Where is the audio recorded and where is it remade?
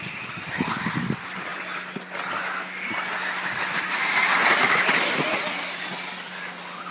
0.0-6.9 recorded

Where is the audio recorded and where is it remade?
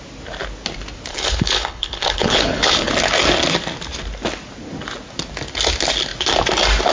0.0-1.1 recorded; 1.1-2.9 remade; 2.9-6.9 recorded